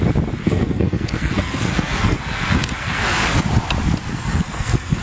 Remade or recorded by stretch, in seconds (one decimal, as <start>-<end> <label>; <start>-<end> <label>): 0.0-0.4 recorded; 0.4-3.4 remade; 3.4-4.1 recorded; 4.1-5.0 remade